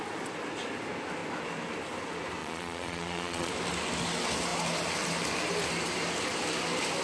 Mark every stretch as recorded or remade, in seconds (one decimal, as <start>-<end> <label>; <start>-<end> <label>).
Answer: 0.0-2.4 recorded; 2.4-3.5 remade; 3.5-7.0 recorded